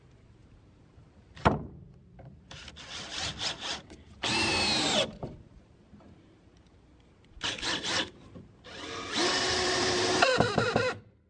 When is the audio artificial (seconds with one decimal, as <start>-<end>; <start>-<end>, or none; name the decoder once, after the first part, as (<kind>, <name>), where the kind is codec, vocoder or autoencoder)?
0.4-2.6 (vocoder, BigVGAN v2); 3.1-6.9; 9.2-11.3